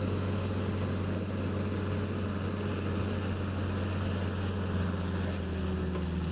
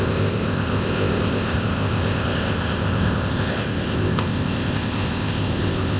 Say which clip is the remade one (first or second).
second